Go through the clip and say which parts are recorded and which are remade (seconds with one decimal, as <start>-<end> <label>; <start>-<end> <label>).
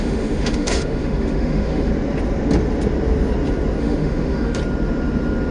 0.0-1.9 remade; 1.9-3.8 recorded; 3.8-4.6 remade; 4.6-5.5 recorded